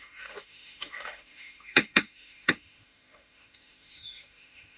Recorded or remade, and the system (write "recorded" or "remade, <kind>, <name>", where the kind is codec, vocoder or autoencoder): remade, autoencoder, DAC-VAE